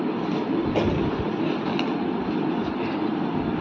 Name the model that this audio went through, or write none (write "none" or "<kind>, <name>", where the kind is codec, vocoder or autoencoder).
none